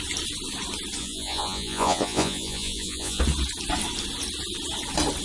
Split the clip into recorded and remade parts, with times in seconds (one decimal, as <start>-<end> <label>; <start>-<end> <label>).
0.0-1.0 recorded; 1.0-3.2 remade; 3.2-5.2 recorded